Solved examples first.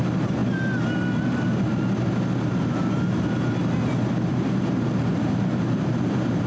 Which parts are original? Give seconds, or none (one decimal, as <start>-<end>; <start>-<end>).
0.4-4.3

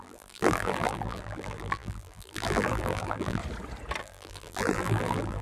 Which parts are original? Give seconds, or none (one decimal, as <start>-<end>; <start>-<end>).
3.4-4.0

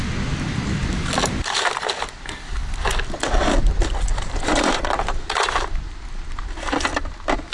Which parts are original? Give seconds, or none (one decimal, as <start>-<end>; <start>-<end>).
0.0-4.1; 5.2-7.5

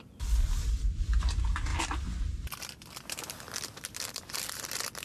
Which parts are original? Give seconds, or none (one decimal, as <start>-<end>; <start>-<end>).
0.0-5.0

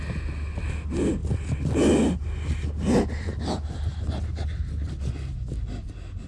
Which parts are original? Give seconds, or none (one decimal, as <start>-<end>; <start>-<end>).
0.0-6.3